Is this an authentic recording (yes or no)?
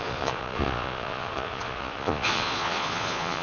no